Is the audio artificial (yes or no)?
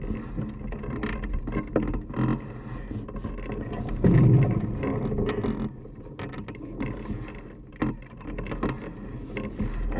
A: no